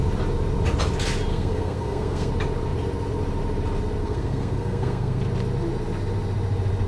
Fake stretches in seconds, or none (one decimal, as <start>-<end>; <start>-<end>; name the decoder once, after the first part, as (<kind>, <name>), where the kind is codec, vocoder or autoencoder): 1.3-2.3 (codec, SNAC); 4.0-5.2